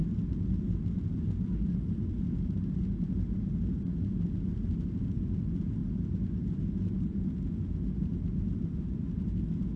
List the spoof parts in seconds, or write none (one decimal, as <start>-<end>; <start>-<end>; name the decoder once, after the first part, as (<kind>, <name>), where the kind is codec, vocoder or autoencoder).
none